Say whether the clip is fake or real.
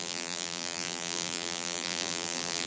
fake